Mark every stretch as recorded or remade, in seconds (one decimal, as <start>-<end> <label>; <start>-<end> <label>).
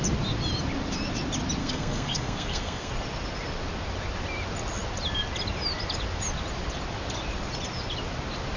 0.0-1.6 recorded; 1.6-2.9 remade; 2.9-8.6 recorded